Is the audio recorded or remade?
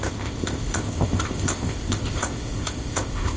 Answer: remade